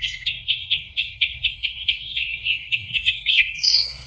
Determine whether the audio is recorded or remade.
remade